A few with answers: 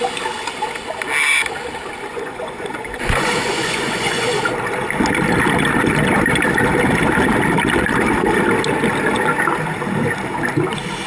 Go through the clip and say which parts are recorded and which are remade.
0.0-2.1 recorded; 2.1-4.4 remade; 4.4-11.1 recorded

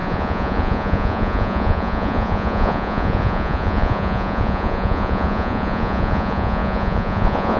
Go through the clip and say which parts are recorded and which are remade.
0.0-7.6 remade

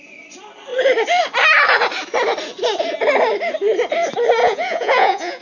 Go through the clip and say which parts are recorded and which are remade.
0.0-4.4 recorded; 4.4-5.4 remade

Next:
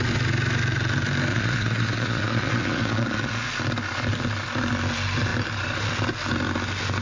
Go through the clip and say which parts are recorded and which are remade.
0.0-1.3 recorded; 1.3-3.5 remade; 3.5-7.0 recorded

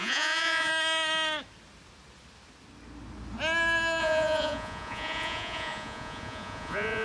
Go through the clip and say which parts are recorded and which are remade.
0.0-0.7 remade; 0.7-4.0 recorded; 4.0-7.0 remade

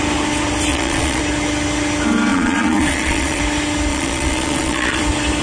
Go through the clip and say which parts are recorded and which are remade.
0.0-0.7 recorded; 0.7-1.2 remade; 1.2-2.3 recorded; 2.3-3.4 remade; 3.4-3.9 recorded; 3.9-5.0 remade; 5.0-5.4 recorded

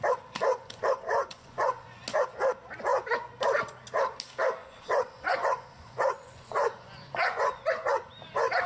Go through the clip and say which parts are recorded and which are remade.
0.0-0.5 recorded; 0.5-2.0 remade; 2.0-4.6 recorded; 4.6-8.1 remade; 8.1-8.7 recorded